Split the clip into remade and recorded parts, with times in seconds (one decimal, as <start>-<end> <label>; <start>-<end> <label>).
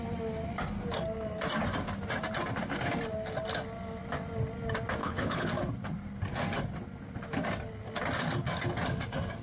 0.0-5.0 recorded; 5.0-5.5 remade; 5.5-9.4 recorded